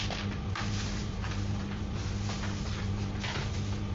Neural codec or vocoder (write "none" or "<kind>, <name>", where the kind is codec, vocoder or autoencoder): none